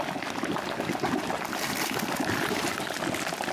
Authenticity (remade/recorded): recorded